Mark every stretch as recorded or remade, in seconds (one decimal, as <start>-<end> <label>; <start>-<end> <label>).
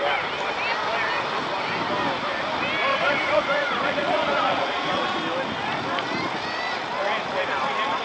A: 0.0-2.9 recorded; 2.9-5.2 remade; 5.2-8.0 recorded